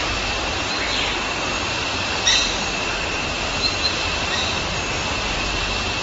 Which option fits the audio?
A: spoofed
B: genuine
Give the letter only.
A